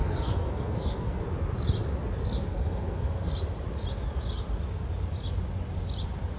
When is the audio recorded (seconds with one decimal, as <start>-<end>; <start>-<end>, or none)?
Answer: 1.2-2.5; 3.3-6.4